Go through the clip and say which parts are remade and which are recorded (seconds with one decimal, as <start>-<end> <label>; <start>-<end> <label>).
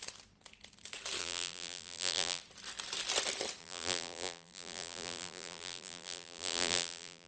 0.0-1.2 recorded; 1.2-2.4 remade; 2.4-3.6 recorded; 3.6-7.3 remade